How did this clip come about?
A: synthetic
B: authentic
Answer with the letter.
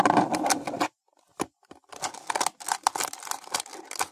B